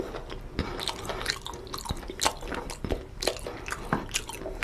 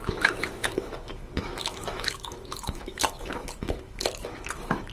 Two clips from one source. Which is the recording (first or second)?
first